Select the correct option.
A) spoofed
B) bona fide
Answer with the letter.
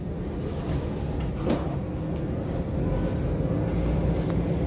B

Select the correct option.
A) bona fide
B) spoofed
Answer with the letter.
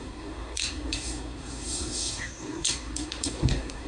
B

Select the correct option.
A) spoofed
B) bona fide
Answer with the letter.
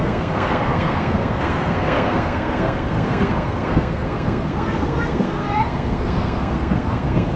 A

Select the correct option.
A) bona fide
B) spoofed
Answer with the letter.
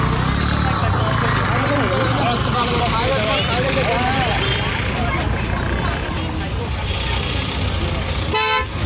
A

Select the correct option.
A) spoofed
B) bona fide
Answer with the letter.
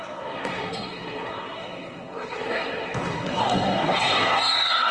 A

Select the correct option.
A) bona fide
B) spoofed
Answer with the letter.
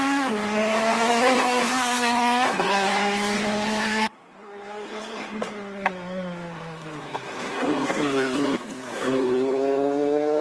B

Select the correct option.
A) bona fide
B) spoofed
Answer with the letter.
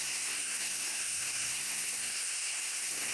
B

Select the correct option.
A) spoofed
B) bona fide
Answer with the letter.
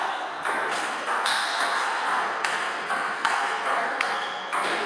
A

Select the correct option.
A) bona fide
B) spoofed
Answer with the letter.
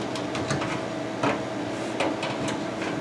A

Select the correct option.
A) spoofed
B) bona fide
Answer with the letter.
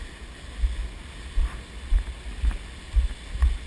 B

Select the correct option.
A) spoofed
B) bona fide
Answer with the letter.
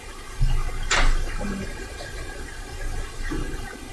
B